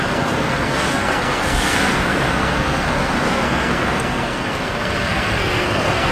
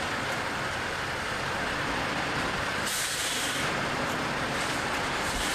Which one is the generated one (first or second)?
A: first